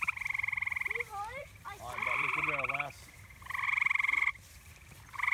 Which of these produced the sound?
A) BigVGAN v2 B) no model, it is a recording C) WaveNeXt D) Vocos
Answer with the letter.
A